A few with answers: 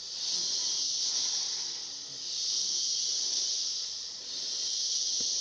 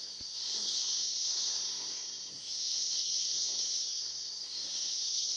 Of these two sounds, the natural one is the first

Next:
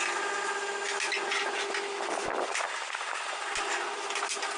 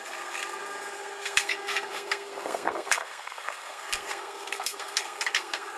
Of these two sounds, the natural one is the first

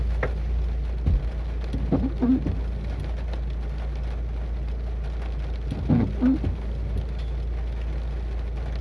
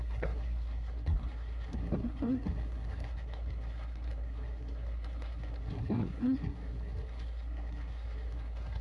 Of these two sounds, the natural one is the first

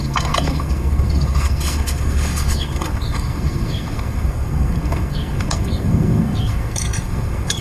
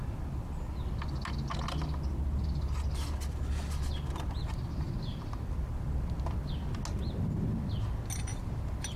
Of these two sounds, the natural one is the second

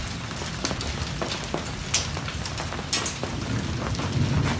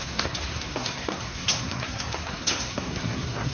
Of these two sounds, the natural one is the first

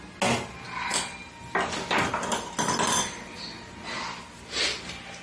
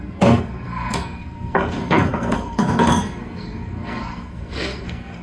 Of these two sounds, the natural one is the first